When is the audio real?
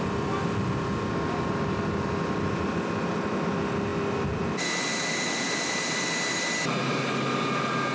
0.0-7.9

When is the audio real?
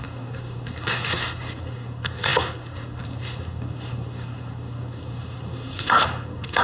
none